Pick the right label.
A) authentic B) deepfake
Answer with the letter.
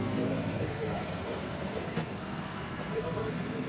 B